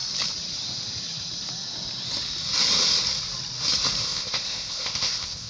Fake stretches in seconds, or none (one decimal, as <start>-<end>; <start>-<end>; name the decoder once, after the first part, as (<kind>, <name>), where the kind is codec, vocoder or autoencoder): 4.0-5.5 (codec, ZipCodec)